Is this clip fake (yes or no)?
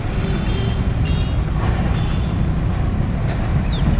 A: no